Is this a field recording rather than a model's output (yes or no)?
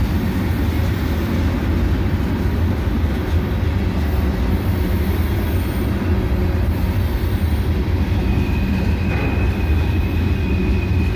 yes